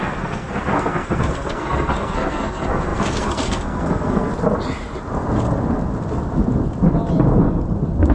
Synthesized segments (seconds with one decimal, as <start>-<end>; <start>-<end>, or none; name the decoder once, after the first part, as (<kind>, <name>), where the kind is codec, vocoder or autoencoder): 0.0-4.3 (codec, SNAC)